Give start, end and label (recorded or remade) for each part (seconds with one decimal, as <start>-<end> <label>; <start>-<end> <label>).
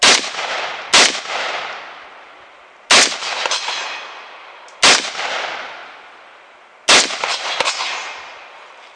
0.0-9.0 recorded